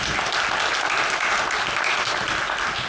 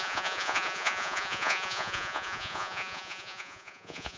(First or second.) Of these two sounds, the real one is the first